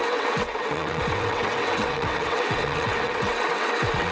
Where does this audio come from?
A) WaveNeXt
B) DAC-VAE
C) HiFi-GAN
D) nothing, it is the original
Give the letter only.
A